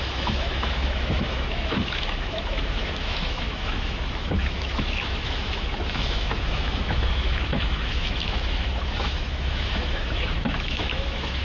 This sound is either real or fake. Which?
fake